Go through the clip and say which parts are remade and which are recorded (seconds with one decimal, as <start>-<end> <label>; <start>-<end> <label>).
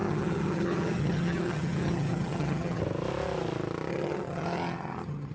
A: 0.0-2.8 remade; 2.8-3.9 recorded; 3.9-5.3 remade